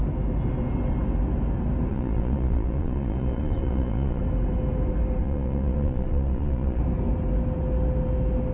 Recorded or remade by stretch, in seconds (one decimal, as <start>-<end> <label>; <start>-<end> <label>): 0.0-1.9 recorded; 1.9-4.2 remade; 4.2-5.2 recorded; 5.2-6.8 remade; 6.8-8.5 recorded